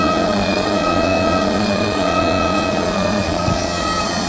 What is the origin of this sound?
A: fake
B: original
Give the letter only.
A